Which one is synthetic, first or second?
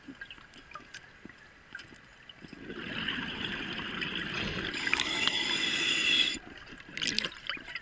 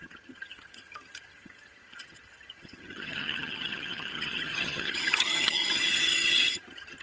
second